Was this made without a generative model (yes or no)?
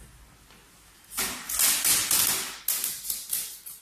yes